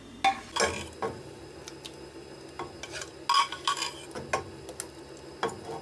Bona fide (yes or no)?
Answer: yes